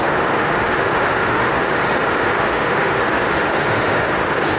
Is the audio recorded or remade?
remade